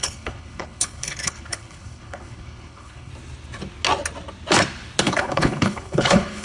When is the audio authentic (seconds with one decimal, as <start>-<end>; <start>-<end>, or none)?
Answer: 3.1-5.0